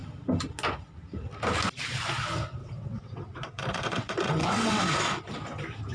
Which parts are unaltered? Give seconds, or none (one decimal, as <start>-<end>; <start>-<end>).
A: 0.0-2.6; 4.8-5.9